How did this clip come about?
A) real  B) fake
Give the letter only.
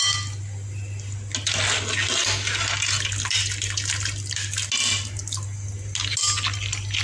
A